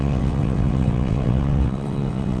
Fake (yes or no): yes